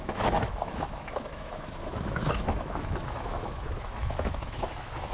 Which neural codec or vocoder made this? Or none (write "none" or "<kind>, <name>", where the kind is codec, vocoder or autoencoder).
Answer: autoencoder, DAC-VAE